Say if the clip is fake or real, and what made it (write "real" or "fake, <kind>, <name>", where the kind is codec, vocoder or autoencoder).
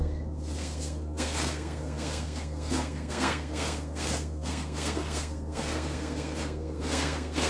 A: fake, codec, SNAC